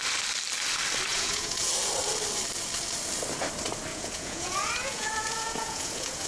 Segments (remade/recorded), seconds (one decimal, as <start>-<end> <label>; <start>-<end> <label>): 0.0-1.1 recorded; 1.1-1.7 remade; 1.7-3.9 recorded; 3.9-6.3 remade